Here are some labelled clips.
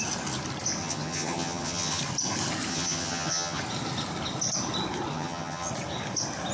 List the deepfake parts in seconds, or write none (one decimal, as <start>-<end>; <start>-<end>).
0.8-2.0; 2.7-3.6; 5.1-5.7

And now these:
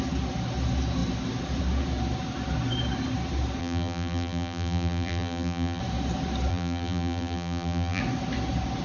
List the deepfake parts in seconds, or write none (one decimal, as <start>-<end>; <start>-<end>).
3.6-5.8; 6.5-8.0

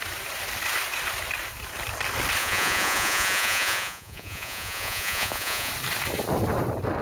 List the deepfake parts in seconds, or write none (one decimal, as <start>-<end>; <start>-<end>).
2.4-5.7

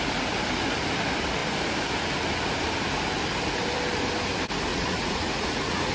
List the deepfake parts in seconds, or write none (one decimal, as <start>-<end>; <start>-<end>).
4.7-5.9

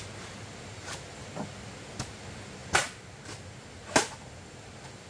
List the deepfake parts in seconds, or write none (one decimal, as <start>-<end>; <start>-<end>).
none

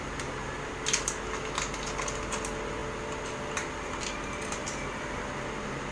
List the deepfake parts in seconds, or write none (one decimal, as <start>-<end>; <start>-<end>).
4.6-5.3